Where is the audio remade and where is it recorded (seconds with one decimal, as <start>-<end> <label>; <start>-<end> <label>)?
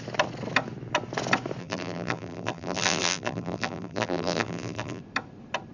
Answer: 0.0-1.6 recorded; 1.6-5.0 remade; 5.0-5.7 recorded